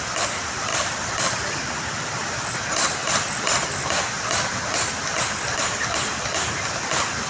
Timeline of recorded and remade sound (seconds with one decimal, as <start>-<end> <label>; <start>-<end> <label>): 0.0-2.2 recorded; 2.2-5.0 remade; 5.0-7.3 recorded